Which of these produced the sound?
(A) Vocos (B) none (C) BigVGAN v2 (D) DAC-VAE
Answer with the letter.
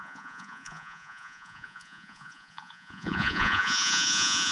A